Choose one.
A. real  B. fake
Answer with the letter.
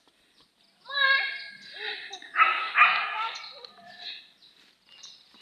A